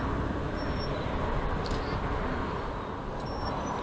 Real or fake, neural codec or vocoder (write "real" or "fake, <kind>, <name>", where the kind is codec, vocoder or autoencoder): real